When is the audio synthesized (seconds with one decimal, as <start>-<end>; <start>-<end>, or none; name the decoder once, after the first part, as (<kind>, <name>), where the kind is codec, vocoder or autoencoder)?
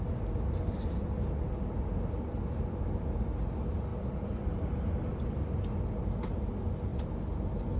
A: none